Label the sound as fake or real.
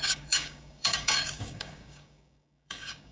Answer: fake